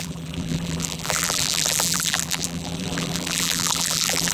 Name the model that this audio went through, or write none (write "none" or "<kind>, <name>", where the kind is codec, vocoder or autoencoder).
vocoder, BigVGAN v2